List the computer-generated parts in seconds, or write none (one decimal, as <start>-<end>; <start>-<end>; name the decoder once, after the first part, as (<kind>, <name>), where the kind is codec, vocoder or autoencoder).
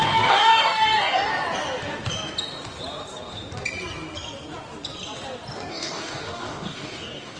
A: 0.0-1.3 (codec, DAC); 5.7-7.4